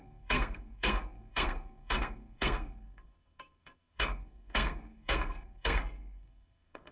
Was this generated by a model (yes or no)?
yes